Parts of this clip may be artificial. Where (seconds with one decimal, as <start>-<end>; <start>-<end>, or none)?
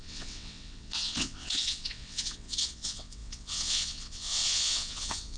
0.0-5.4